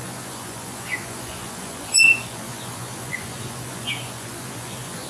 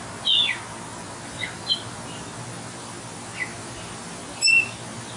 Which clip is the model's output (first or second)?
first